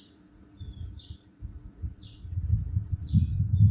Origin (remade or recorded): remade